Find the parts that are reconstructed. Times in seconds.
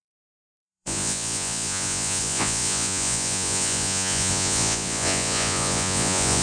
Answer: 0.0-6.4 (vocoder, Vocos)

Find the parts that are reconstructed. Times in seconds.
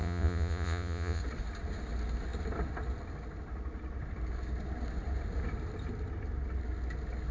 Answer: 0.0-1.2 (vocoder, Vocos)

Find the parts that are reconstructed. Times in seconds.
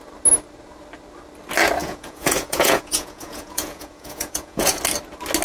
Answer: 1.8-4.8 (vocoder, Vocos)